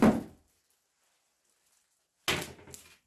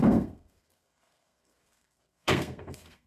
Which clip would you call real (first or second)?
first